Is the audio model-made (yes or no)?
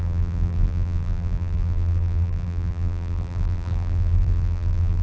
yes